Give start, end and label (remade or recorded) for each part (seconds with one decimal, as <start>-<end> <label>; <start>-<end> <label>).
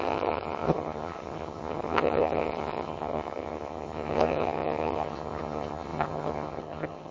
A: 0.0-7.1 remade